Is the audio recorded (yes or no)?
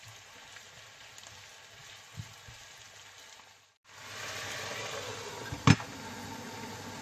yes